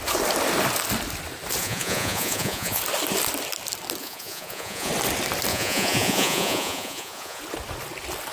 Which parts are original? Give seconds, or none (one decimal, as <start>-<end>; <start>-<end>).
0.0-1.6; 2.8-4.0; 4.9-5.5; 7.4-8.3